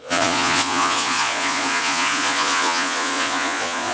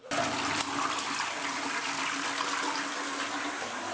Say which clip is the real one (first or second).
second